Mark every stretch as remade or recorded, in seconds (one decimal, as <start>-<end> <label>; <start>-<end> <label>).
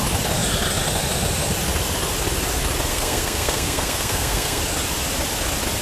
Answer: 0.0-2.9 recorded; 2.9-4.6 remade; 4.6-5.8 recorded